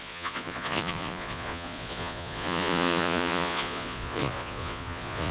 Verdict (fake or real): fake